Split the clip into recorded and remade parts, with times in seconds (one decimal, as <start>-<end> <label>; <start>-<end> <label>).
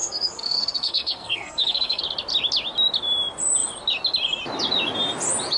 0.0-2.0 remade; 2.0-5.6 recorded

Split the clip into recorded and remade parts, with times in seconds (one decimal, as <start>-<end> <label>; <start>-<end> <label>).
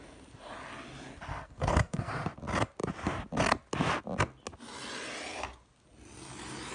0.0-1.3 recorded; 1.3-2.1 remade; 2.1-6.7 recorded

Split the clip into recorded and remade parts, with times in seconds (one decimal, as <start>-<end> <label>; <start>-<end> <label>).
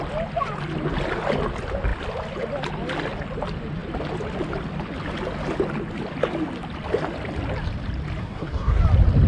0.0-8.2 recorded; 8.2-8.8 remade; 8.8-9.3 recorded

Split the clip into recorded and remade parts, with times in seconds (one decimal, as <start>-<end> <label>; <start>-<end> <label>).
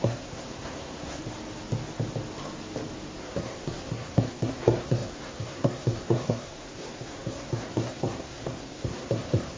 0.0-1.2 remade; 1.2-3.2 recorded; 3.2-9.6 remade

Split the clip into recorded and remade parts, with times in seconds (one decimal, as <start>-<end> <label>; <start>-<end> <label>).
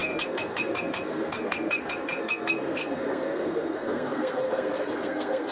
0.0-5.5 remade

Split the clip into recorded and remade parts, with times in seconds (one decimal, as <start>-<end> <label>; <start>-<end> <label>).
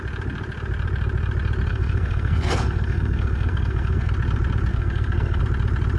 0.0-1.7 recorded; 1.7-4.1 remade; 4.1-4.7 recorded; 4.7-5.4 remade; 5.4-6.0 recorded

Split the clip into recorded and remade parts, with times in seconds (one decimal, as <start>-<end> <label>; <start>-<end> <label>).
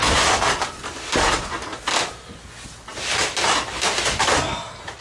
0.0-5.0 recorded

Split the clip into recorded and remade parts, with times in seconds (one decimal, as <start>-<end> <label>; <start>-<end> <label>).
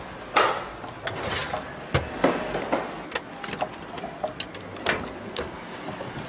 0.0-6.3 recorded